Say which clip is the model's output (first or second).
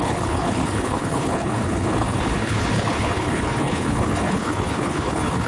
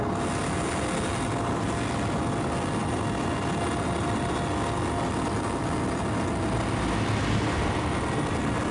first